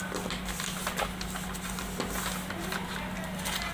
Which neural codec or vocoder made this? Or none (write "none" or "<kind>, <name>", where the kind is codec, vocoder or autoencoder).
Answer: none